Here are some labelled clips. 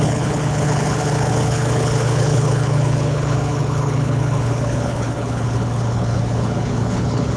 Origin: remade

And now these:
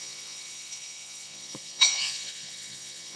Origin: remade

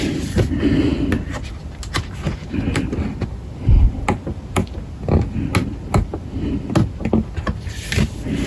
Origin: recorded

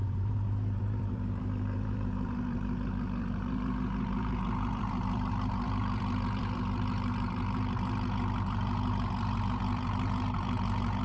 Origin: remade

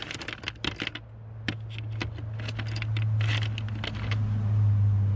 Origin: recorded